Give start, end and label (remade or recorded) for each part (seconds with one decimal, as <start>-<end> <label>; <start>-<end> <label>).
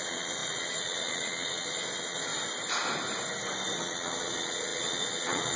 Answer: 0.0-2.3 remade; 2.3-3.8 recorded; 3.8-5.6 remade